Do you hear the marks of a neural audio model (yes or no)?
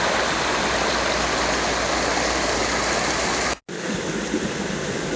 no